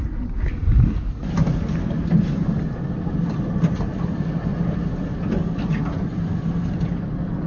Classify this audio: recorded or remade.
recorded